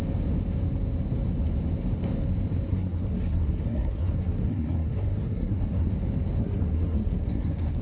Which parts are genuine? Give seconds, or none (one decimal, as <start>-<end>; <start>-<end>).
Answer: 0.0-2.7; 5.9-6.4